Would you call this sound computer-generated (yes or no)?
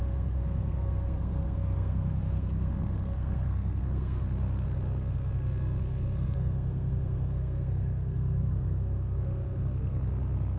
yes